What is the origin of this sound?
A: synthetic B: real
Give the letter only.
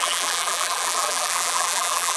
A